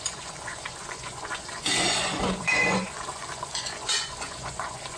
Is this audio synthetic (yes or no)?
yes